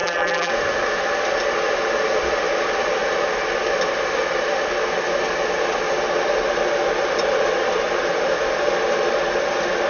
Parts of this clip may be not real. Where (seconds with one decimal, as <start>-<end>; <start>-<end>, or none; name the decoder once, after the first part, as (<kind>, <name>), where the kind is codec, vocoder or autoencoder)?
0.0-0.5 (vocoder, BigVGAN v2)